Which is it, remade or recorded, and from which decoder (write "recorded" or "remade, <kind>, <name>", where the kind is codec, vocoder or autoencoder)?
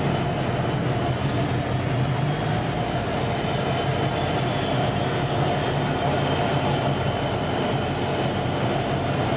recorded